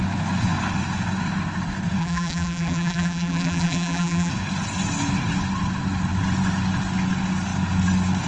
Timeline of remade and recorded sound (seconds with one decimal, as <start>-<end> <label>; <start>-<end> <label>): 0.0-2.0 recorded; 2.0-4.3 remade; 4.3-8.3 recorded